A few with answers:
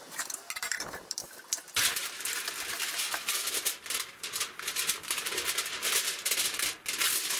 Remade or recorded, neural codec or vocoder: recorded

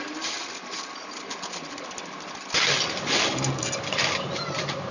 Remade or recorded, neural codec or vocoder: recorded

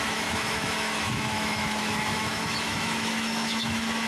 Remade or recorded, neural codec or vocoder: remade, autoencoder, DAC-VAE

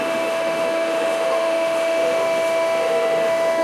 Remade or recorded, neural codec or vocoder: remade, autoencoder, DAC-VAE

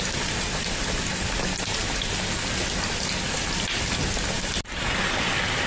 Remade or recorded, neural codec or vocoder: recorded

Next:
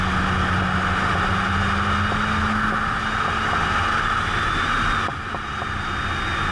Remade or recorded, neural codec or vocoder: recorded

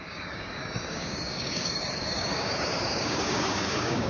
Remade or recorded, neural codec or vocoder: remade, codec, DAC